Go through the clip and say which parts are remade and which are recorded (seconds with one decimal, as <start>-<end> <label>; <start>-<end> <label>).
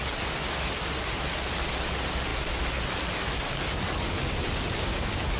0.0-5.4 recorded